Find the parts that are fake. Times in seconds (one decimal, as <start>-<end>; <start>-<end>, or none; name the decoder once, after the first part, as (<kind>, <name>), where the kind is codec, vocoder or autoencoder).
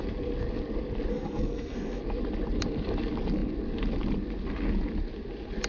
1.1-2.0 (codec, SNAC)